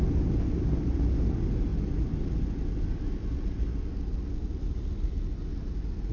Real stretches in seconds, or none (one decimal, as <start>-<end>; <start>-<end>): 0.0-6.1